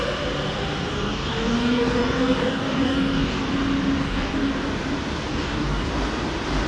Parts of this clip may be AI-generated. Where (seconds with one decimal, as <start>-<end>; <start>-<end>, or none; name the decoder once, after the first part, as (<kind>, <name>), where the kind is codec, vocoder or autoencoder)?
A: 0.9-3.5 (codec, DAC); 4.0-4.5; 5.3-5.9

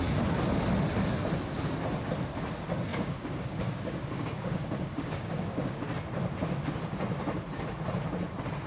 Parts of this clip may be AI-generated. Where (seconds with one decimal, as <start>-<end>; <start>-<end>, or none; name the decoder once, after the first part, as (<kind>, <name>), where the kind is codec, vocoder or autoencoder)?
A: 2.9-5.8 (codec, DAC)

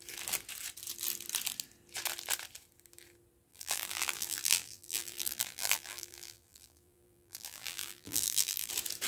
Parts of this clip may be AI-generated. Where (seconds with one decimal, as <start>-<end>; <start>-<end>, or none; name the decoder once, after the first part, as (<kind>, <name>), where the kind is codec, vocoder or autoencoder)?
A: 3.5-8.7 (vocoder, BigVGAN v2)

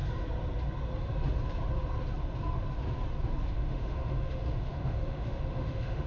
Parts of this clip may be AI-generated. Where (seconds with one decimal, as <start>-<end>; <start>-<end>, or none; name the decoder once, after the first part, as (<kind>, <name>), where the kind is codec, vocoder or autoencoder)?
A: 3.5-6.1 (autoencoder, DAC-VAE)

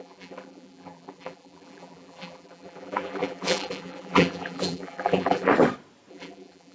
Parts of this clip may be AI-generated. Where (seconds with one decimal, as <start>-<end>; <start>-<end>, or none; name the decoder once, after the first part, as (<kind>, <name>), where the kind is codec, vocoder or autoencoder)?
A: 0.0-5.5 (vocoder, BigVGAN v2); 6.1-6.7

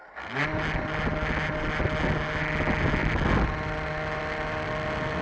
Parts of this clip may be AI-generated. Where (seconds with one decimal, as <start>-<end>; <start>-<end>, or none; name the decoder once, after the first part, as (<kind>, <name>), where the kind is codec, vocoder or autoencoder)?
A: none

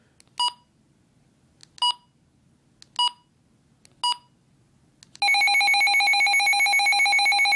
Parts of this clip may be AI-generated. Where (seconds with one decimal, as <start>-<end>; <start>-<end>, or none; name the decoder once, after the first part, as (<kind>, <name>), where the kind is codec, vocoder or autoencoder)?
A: none